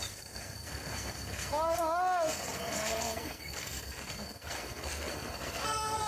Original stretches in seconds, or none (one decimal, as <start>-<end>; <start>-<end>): none